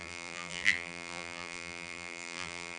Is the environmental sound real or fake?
fake